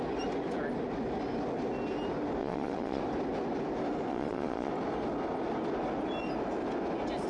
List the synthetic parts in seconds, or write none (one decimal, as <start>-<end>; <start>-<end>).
2.4-3.0; 4.1-4.7